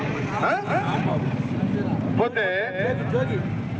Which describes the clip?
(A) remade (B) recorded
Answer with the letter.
B